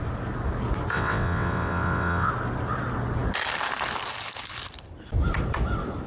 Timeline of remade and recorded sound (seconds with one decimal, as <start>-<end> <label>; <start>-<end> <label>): 0.0-0.9 recorded; 0.9-2.3 remade; 2.3-6.1 recorded